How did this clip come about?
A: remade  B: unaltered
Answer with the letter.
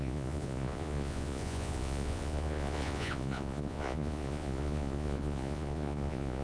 A